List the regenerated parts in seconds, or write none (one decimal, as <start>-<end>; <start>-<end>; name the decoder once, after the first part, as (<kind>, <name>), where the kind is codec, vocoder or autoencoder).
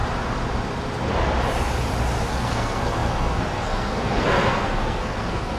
2.3-5.6 (codec, SNAC)